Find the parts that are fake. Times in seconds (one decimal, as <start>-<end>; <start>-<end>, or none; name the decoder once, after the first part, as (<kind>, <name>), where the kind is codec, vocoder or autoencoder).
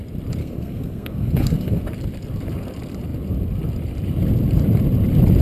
0.4-1.8 (codec, SNAC)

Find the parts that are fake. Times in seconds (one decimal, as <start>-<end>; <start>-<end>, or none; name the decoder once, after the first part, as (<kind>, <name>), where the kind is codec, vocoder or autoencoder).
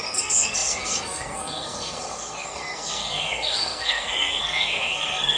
0.0-5.4 (codec, SNAC)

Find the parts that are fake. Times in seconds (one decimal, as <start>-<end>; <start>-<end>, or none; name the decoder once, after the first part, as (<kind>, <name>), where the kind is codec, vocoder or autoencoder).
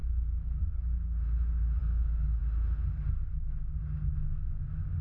0.0-0.8 (codec, SNAC); 1.8-2.4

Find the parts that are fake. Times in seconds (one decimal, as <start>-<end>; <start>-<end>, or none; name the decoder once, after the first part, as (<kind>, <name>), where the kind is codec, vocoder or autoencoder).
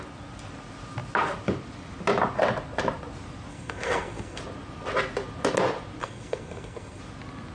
3.5-4.4 (codec, SNAC); 6.0-7.0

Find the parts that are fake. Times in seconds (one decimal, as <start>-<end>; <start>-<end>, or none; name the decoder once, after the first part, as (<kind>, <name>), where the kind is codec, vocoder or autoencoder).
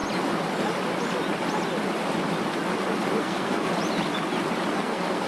3.2-3.7 (codec, SNAC); 4.7-5.3